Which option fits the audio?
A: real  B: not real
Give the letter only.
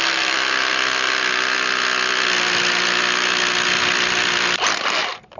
A